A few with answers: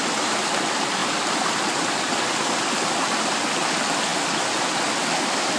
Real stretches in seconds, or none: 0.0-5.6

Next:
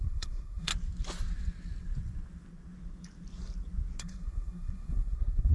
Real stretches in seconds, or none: 0.7-4.0

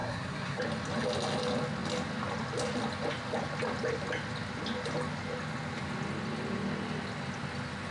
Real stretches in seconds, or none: 0.6-7.9

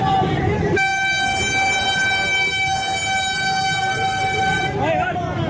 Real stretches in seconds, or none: 0.0-5.5

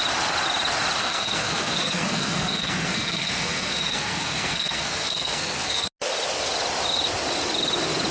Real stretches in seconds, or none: 0.0-1.0; 5.9-8.1

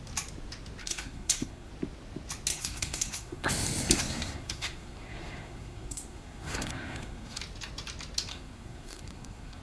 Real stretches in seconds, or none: 0.0-0.8; 1.7-2.5; 3.5-4.0; 7.4-8.3

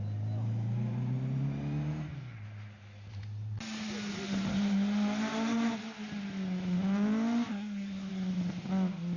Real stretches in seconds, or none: 0.0-7.5; 8.1-9.2